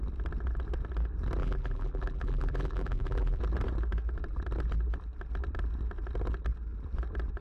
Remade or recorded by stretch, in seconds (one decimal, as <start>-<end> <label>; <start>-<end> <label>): 0.0-1.4 recorded; 1.4-3.4 remade; 3.4-7.4 recorded